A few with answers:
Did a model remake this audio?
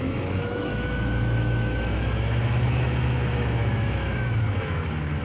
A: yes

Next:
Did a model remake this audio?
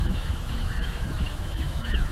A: yes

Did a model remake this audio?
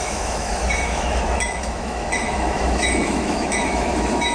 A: yes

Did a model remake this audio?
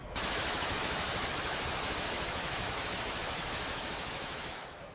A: yes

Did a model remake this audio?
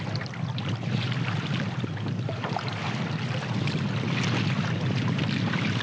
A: no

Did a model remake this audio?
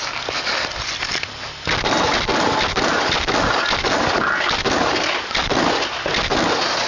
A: no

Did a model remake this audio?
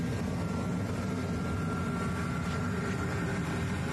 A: no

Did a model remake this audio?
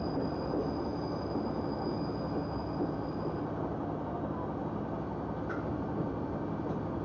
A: no